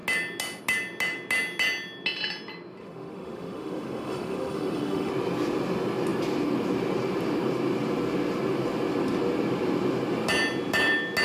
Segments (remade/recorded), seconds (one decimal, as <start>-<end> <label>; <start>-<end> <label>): 0.0-2.8 recorded; 2.8-5.1 remade; 5.1-11.2 recorded